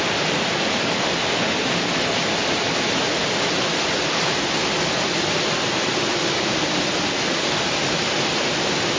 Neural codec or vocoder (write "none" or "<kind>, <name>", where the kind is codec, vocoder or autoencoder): none